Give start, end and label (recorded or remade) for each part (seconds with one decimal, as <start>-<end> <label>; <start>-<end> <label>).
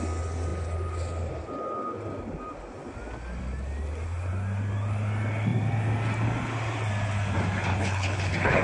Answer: 0.0-7.7 recorded; 7.7-8.6 remade